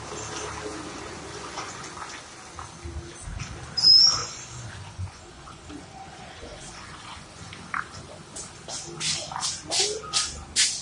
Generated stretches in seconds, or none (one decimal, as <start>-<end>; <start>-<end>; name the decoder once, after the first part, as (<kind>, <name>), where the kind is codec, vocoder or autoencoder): 0.7-2.2 (vocoder, Vocos); 4.2-7.5